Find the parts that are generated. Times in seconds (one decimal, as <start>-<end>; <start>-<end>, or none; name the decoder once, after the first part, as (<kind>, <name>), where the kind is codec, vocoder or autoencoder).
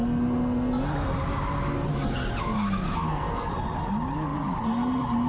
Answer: 2.4-3.5 (codec, SNAC)